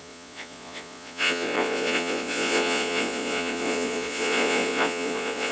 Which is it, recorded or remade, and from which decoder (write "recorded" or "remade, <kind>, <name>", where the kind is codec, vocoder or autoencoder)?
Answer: remade, vocoder, Vocos